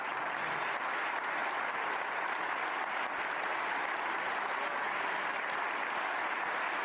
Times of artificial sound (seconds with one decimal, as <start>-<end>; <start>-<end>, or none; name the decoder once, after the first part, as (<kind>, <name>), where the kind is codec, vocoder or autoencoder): none